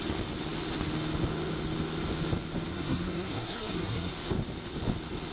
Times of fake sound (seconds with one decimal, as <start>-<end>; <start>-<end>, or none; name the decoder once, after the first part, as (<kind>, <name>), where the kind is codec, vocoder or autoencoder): 2.7-4.1 (codec, SNAC)